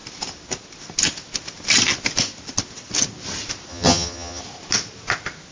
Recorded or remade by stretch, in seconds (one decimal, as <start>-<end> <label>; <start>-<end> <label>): 0.0-3.7 recorded; 3.7-4.4 remade; 4.4-5.5 recorded